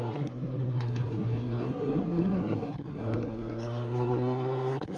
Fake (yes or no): yes